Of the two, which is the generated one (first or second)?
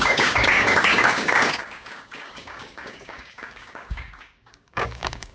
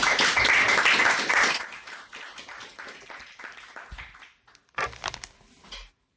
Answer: first